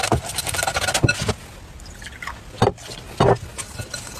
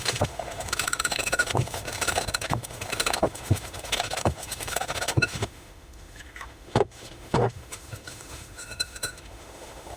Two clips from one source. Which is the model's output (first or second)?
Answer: second